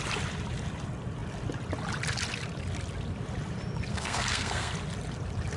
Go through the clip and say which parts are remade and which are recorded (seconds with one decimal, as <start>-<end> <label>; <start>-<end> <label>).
0.0-3.9 recorded; 3.9-4.7 remade; 4.7-5.6 recorded